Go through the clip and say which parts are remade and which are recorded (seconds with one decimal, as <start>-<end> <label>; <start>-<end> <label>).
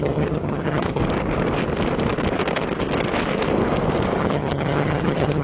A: 0.0-1.0 remade; 1.0-4.2 recorded; 4.2-5.4 remade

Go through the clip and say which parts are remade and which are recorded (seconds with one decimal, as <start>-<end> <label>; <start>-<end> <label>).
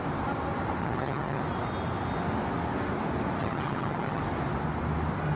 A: 0.0-0.8 recorded; 0.8-1.4 remade; 1.4-3.4 recorded; 3.4-4.2 remade; 4.2-5.4 recorded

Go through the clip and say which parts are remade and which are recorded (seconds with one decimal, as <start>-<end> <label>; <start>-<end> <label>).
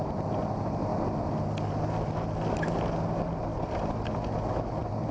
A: 0.0-5.1 recorded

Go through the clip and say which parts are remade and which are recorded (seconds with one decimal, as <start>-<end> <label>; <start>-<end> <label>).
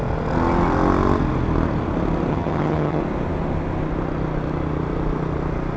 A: 0.0-2.3 recorded; 2.3-3.0 remade; 3.0-5.8 recorded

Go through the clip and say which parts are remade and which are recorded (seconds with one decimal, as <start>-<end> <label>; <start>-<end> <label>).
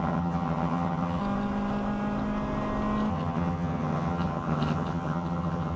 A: 0.0-1.2 remade; 1.2-3.1 recorded; 3.1-5.8 remade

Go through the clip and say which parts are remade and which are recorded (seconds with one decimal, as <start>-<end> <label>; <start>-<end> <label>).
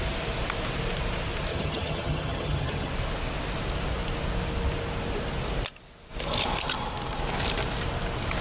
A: 0.0-1.5 recorded; 1.5-2.9 remade; 2.9-8.4 recorded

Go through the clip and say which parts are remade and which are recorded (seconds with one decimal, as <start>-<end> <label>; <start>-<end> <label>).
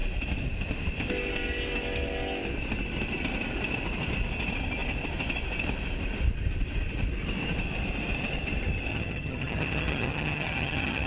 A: 0.0-8.9 recorded; 8.9-11.1 remade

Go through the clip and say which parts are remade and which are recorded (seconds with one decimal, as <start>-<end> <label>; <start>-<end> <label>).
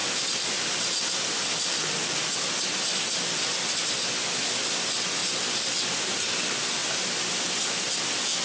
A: 0.0-8.4 recorded